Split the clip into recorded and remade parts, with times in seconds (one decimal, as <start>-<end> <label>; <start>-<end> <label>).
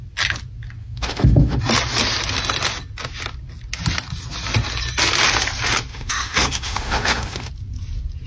0.0-0.8 recorded; 0.8-1.6 remade; 1.6-5.9 recorded; 5.9-7.5 remade; 7.5-8.3 recorded